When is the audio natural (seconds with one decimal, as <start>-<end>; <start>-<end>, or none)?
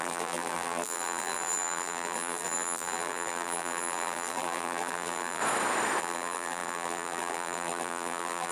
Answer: 5.4-6.0